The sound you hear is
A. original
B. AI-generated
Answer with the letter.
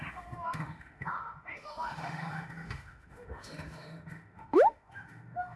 B